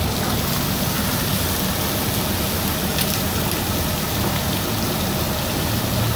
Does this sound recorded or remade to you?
recorded